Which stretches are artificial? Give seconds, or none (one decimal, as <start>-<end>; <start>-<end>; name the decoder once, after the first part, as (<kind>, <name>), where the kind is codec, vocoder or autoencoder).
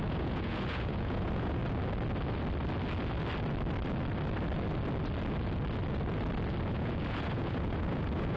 0.0-1.6 (vocoder, Vocos); 6.6-8.4